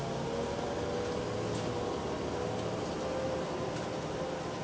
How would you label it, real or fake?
real